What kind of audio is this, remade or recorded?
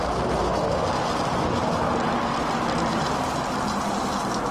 recorded